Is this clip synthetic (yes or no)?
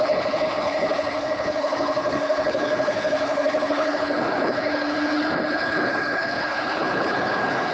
yes